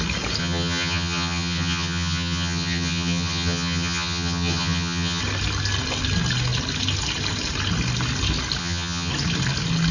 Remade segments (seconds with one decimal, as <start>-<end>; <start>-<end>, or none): 0.4-5.2; 8.6-9.1